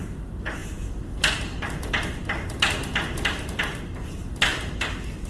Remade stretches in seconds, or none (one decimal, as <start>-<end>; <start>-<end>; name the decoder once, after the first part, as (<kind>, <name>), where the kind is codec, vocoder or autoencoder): none